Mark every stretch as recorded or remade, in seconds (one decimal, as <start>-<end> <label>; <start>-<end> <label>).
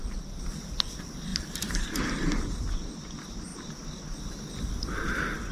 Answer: 0.0-1.3 recorded; 1.3-1.8 remade; 1.8-5.5 recorded